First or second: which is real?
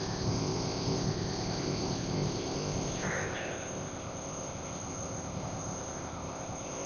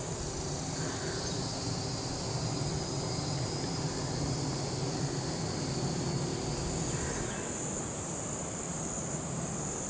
second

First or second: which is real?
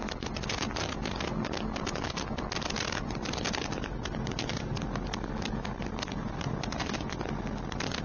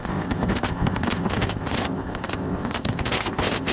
first